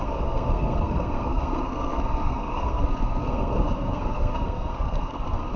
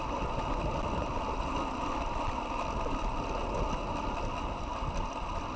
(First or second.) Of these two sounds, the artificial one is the first